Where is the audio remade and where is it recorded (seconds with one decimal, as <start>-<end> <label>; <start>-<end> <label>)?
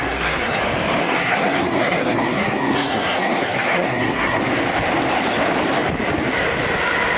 0.0-0.6 remade; 0.6-1.0 recorded; 1.0-4.4 remade; 4.4-7.2 recorded